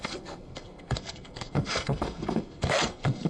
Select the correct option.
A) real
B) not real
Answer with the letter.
B